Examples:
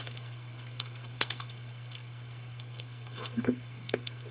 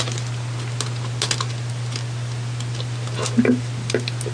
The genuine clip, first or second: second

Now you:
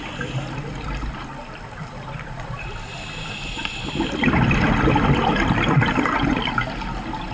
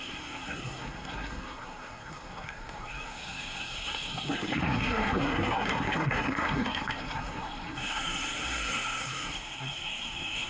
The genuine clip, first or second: first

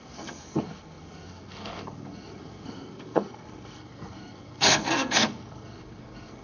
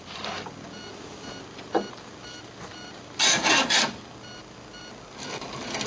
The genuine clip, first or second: second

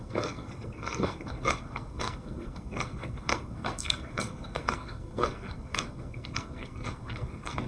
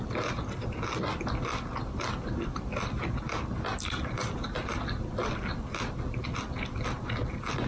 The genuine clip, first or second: second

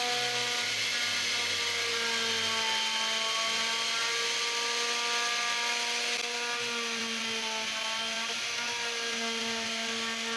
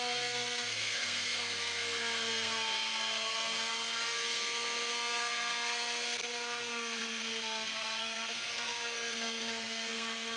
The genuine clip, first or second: first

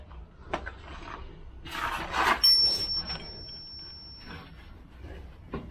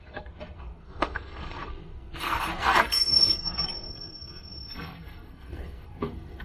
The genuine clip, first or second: first